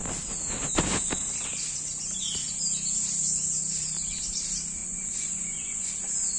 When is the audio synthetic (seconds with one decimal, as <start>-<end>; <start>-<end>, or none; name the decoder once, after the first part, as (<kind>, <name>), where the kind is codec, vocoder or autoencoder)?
4.8-5.9 (vocoder, Vocos)